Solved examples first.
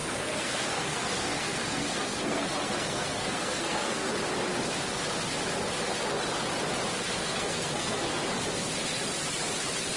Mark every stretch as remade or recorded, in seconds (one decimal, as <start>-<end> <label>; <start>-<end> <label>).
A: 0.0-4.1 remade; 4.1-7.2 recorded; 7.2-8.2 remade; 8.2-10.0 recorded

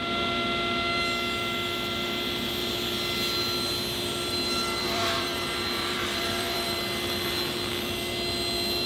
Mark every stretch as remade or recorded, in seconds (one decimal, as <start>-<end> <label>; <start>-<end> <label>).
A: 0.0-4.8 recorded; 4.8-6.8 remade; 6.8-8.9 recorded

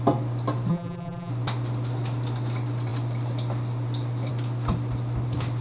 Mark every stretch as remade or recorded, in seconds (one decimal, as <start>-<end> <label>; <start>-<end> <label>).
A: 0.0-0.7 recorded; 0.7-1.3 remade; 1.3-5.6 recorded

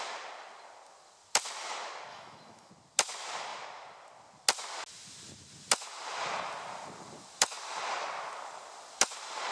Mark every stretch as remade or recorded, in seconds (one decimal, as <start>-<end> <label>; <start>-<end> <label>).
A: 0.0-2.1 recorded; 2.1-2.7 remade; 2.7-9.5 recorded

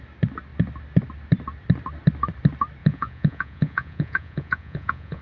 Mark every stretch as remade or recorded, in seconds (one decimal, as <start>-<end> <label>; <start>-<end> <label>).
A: 0.0-2.8 recorded; 2.8-5.2 remade

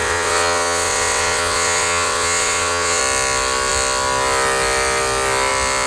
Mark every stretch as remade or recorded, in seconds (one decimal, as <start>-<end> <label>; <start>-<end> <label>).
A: 0.0-3.0 remade; 3.0-5.9 recorded